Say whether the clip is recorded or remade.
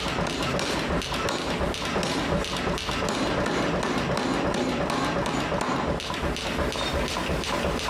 recorded